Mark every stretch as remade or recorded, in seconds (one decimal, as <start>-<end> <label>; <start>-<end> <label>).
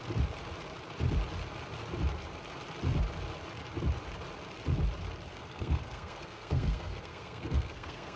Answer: 0.0-5.3 recorded; 5.3-8.2 remade